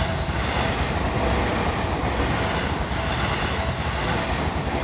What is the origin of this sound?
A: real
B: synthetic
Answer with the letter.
A